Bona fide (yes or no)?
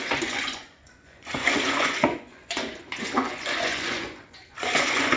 no